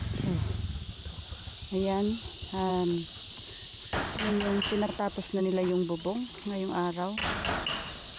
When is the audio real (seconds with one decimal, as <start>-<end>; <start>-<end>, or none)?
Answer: 0.0-8.2